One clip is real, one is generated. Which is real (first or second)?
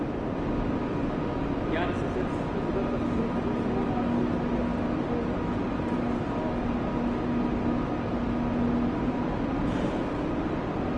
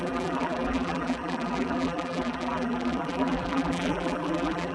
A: first